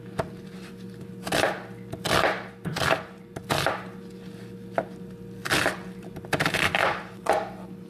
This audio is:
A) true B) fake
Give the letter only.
A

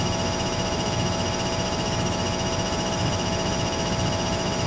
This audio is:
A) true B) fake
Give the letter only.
B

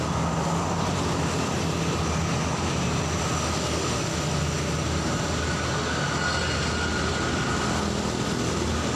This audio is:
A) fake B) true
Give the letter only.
B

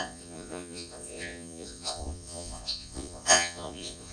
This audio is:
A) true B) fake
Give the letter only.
B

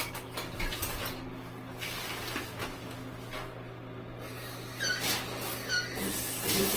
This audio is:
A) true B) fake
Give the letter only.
A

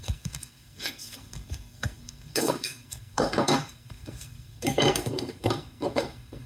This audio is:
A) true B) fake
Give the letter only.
B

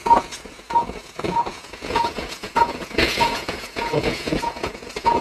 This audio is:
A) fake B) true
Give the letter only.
A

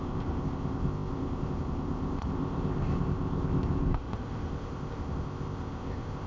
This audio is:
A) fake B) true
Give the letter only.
A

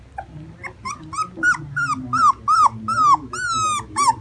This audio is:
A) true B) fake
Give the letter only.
A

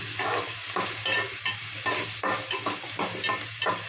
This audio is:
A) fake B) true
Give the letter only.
B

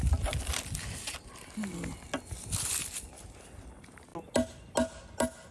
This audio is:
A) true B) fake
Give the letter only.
A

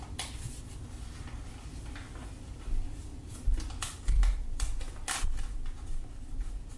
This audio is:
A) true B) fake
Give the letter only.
A